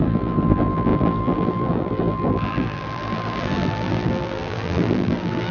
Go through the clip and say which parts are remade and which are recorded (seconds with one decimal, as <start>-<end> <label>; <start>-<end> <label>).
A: 0.0-5.5 remade